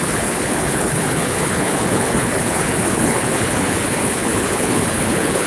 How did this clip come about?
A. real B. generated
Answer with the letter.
B